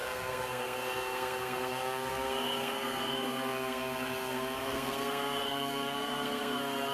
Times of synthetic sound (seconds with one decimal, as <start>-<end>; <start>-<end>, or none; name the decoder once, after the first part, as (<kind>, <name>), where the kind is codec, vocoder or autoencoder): 0.0-6.9 (codec, SNAC)